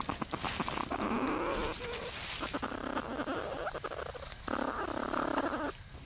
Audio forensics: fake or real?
real